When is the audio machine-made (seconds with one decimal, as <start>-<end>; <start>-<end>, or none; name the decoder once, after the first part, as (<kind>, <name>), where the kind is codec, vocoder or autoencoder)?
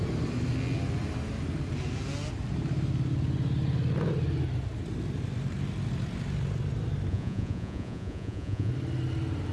7.1-8.7 (vocoder, Vocos)